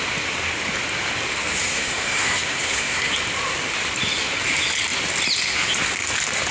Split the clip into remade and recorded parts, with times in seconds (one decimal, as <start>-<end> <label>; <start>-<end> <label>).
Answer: 0.0-1.6 recorded; 1.6-3.1 remade; 3.1-6.5 recorded